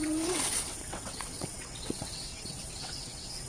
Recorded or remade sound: remade